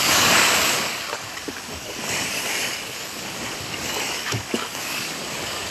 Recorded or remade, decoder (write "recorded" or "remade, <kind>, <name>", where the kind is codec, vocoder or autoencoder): remade, codec, DAC